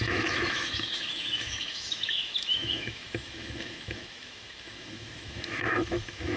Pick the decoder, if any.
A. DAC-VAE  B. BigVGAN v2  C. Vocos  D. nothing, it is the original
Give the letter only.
A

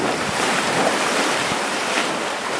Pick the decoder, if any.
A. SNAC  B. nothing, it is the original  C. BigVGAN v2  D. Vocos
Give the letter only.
C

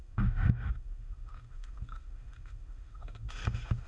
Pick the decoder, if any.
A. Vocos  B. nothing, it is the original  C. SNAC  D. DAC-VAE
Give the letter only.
D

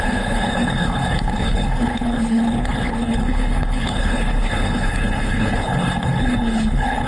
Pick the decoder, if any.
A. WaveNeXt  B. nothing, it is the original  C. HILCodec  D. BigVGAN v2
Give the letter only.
C